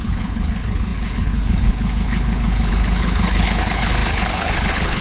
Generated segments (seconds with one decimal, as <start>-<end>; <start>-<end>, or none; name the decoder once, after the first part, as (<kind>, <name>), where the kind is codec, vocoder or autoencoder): 0.0-5.0 (codec, HILCodec)